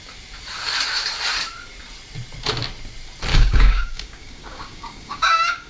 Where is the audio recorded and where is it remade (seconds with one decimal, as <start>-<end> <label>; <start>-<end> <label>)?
0.0-3.3 recorded; 3.3-5.7 remade